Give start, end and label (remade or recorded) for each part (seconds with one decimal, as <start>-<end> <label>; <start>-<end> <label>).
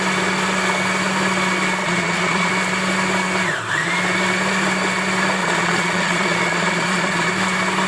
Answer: 0.0-1.8 recorded; 1.8-2.5 remade; 2.5-5.4 recorded; 5.4-7.3 remade; 7.3-7.9 recorded